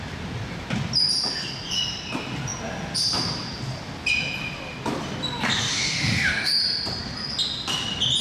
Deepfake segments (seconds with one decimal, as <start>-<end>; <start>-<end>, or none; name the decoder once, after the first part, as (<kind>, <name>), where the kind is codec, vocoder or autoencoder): 5.7-6.6 (autoencoder, DAC-VAE)